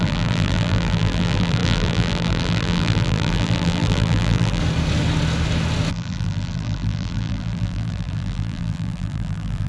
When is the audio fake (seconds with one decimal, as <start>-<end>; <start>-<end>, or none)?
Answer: 0.0-4.6; 5.9-9.7